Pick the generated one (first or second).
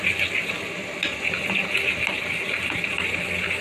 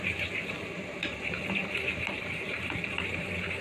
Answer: second